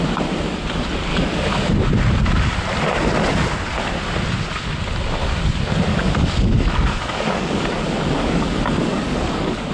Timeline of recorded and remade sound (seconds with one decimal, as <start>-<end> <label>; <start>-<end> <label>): 0.0-1.1 recorded; 1.1-1.7 remade; 1.7-5.9 recorded; 5.9-9.7 remade